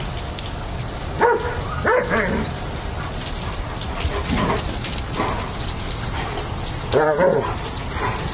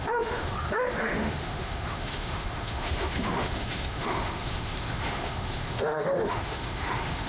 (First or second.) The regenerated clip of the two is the second